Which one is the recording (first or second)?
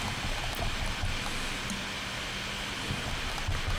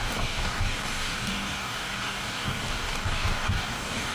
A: first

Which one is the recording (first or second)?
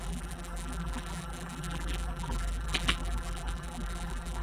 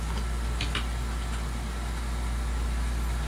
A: second